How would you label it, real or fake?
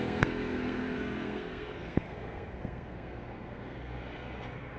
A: fake